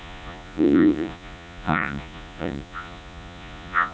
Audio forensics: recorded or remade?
remade